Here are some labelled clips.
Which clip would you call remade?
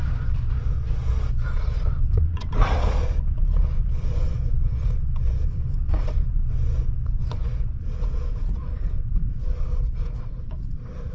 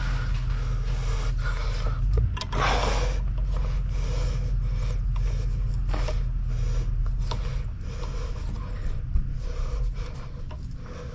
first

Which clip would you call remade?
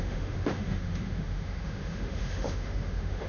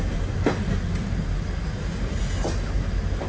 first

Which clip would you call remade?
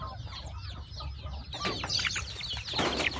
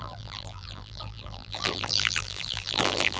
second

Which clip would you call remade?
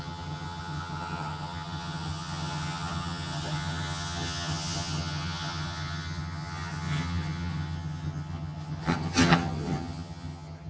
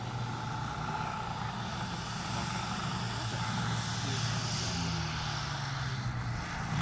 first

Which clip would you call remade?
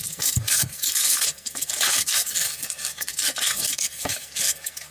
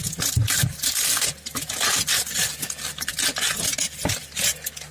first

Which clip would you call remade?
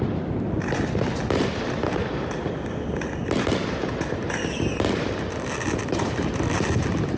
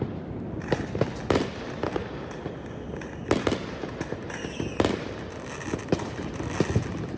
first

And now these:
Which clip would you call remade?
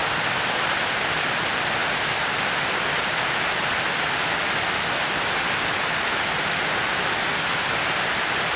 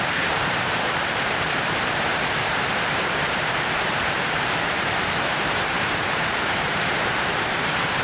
second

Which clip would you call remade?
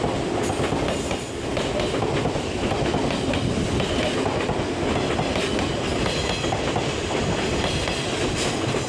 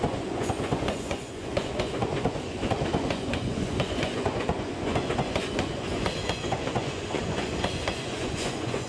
second